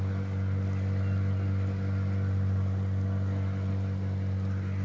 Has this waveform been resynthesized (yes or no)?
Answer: no